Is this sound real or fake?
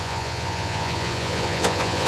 fake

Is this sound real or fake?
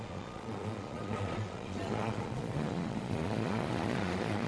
fake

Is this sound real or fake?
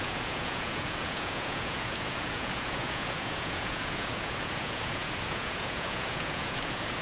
fake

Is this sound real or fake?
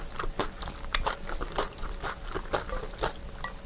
real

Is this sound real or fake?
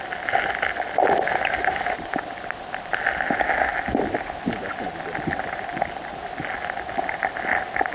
real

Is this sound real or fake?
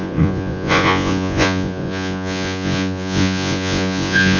fake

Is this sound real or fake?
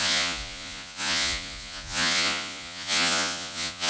fake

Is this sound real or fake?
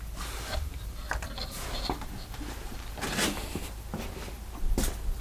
real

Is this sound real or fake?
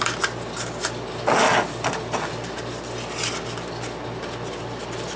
real